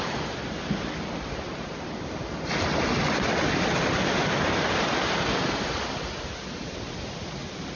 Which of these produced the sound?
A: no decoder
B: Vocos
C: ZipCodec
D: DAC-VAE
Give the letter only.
A